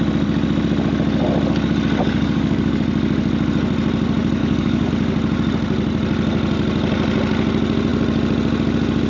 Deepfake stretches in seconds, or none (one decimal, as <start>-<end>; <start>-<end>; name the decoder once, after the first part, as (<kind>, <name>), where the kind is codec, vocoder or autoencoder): 2.0-2.8 (codec, DAC); 4.4-4.9